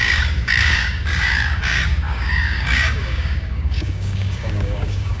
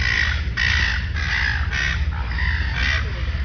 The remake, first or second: first